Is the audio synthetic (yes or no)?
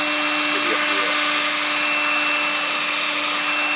no